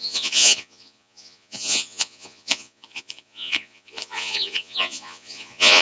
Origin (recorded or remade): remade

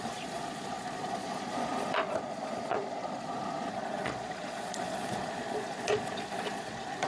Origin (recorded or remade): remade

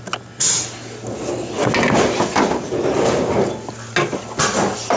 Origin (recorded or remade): recorded